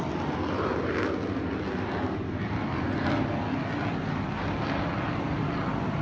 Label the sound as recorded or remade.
recorded